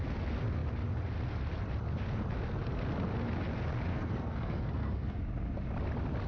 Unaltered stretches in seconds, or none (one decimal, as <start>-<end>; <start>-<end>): 0.0-3.9; 5.2-6.3